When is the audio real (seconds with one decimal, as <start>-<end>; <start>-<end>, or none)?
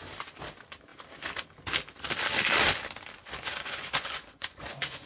0.0-3.2